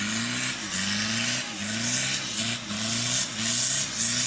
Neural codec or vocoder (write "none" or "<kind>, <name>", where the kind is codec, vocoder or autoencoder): none